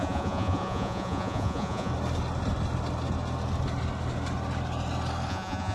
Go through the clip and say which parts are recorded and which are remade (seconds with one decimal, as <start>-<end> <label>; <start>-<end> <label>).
0.0-1.9 remade; 1.9-5.3 recorded; 5.3-5.7 remade